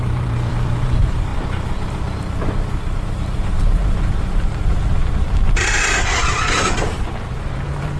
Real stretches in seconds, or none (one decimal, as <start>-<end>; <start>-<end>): none